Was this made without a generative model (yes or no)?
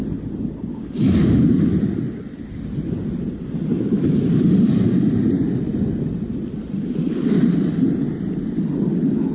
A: yes